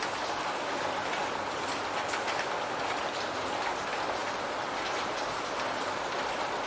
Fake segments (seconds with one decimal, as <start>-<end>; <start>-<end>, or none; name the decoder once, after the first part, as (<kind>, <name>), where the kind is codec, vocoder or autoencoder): none